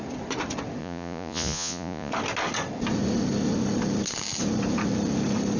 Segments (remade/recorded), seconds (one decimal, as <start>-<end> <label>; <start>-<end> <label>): 0.0-0.8 recorded; 0.8-2.1 remade; 2.1-5.6 recorded